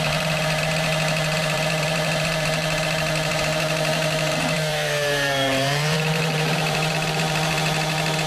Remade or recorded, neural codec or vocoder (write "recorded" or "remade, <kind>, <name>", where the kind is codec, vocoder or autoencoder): remade, vocoder, BigVGAN v2